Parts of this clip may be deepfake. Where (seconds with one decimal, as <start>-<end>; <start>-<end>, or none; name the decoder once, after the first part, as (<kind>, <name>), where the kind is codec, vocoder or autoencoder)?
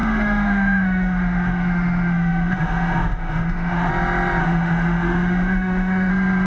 0.0-3.9 (autoencoder, DAC-VAE); 4.4-6.1